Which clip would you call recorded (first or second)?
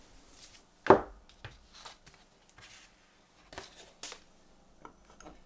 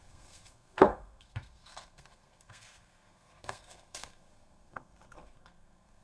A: first